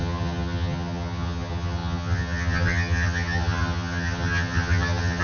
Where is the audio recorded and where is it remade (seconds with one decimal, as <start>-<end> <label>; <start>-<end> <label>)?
0.0-5.2 remade